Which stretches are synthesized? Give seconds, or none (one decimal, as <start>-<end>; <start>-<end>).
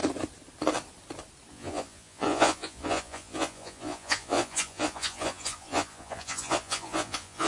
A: 1.5-7.5